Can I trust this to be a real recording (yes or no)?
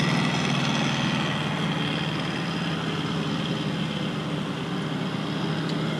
yes